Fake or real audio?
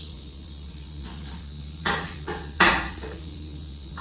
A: fake